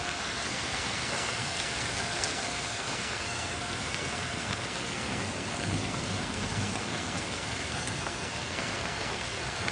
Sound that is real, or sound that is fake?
fake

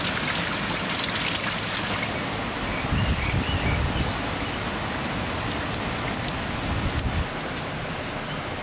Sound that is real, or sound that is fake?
real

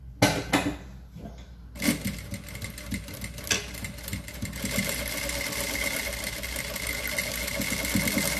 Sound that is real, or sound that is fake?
real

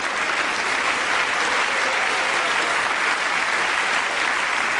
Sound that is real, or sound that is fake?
real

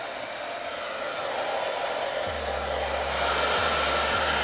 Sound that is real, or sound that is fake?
real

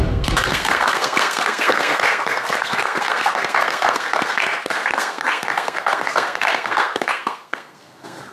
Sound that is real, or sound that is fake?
fake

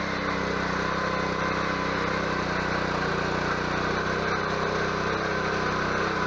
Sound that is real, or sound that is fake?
real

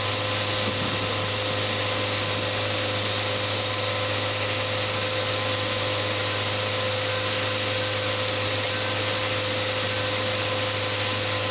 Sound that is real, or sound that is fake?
real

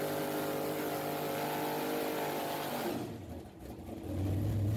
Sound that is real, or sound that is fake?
real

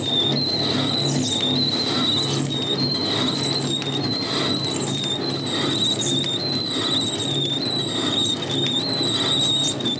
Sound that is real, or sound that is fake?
real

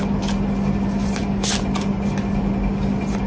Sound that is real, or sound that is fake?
real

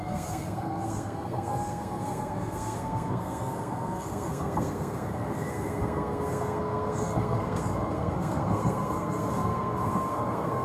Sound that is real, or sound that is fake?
fake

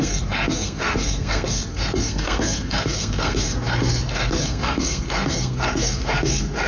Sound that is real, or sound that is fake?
fake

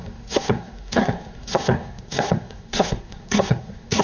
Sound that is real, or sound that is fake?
fake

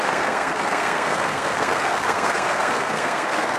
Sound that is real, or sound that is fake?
fake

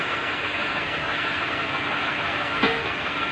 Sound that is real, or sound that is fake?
fake